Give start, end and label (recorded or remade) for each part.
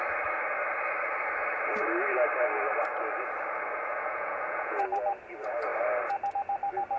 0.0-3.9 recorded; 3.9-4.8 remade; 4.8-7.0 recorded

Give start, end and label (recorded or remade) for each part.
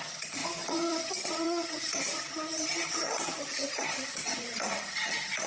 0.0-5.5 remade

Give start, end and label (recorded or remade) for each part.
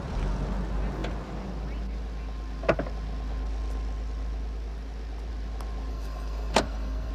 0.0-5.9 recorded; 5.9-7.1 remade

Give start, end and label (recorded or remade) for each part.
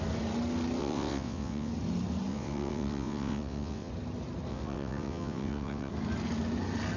0.0-0.8 recorded; 0.8-1.7 remade; 1.7-2.3 recorded; 2.3-3.9 remade; 3.9-4.5 recorded; 4.5-5.9 remade; 5.9-7.0 recorded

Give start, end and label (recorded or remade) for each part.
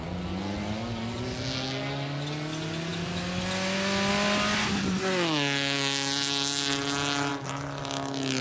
0.0-8.4 recorded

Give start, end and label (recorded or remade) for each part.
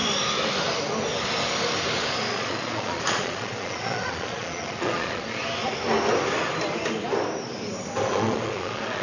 0.0-2.3 recorded; 2.3-5.4 remade; 5.4-8.1 recorded; 8.1-9.0 remade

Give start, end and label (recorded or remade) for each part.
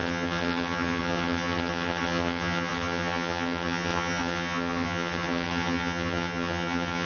0.0-7.1 remade